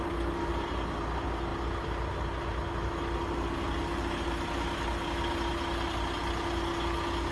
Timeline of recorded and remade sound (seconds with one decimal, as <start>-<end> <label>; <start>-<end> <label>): 0.0-7.3 recorded